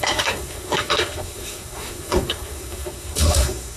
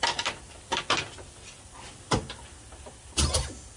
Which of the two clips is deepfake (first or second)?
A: first